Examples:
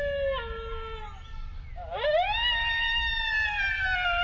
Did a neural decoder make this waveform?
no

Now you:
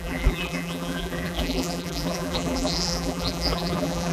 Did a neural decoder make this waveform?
yes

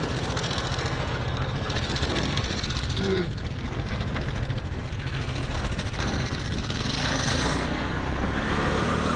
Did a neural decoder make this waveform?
yes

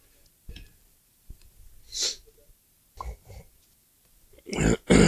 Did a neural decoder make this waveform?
no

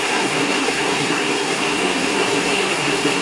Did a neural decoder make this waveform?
yes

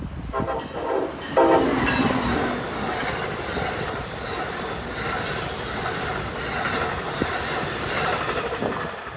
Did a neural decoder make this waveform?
no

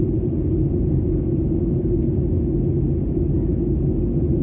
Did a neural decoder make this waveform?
no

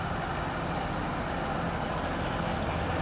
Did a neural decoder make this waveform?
no